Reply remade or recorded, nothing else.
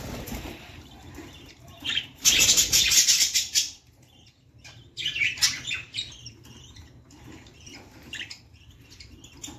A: remade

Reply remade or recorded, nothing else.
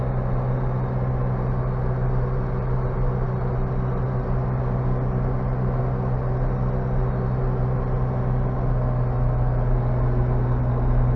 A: recorded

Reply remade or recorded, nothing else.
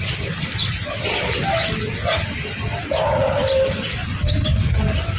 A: recorded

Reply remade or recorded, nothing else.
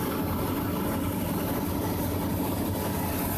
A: recorded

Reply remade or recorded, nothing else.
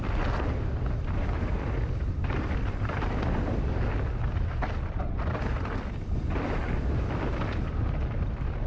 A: remade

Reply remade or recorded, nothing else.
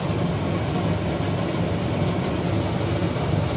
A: remade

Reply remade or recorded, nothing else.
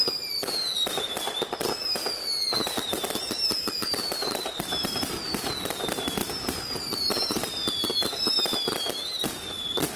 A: recorded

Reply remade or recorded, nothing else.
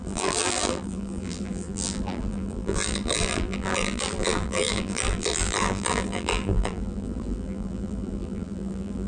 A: remade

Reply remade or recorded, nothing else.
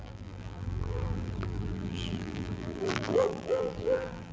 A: remade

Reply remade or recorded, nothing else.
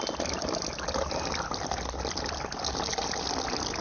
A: recorded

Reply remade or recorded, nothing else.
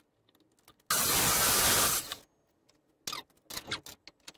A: recorded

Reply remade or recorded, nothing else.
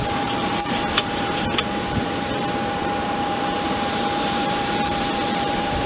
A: remade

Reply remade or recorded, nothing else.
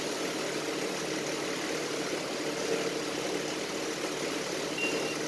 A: recorded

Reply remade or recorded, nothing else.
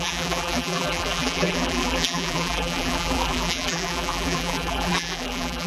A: remade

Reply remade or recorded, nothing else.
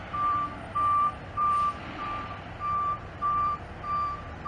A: remade